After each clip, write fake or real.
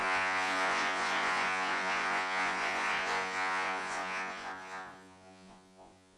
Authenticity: fake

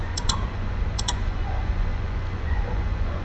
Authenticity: fake